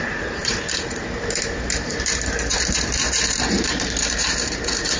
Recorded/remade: remade